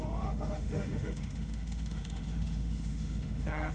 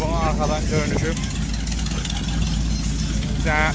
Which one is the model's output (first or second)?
first